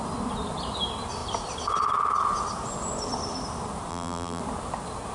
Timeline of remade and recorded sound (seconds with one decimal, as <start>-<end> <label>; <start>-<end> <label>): 0.0-3.9 recorded; 3.9-4.4 remade; 4.4-5.1 recorded